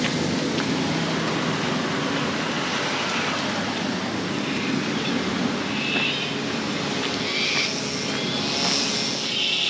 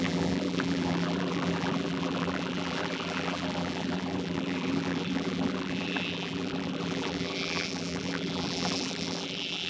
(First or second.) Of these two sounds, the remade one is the second